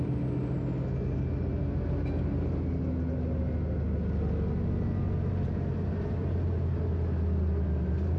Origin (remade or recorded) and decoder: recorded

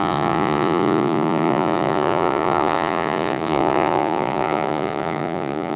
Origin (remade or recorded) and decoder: remade, vocoder, Vocos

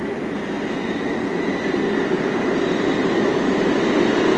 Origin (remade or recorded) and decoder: recorded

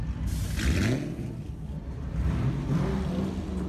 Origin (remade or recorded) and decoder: recorded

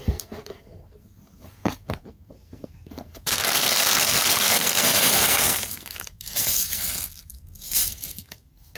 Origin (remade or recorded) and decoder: remade, codec, SNAC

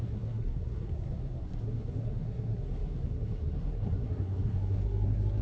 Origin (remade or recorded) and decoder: remade, codec, SNAC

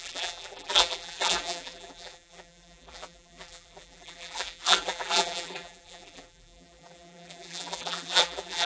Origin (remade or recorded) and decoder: remade, vocoder, BigVGAN v2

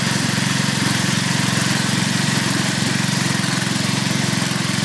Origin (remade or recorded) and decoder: remade, vocoder, BigVGAN v2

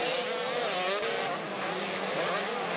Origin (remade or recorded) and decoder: recorded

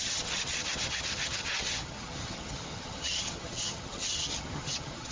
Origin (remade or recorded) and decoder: remade, vocoder, HiFi-GAN